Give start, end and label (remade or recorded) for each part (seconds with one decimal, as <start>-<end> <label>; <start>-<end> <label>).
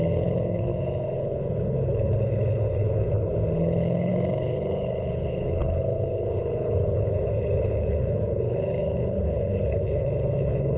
0.0-10.8 remade